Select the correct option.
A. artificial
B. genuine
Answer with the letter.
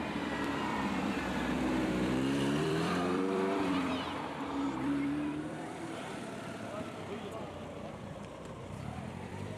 A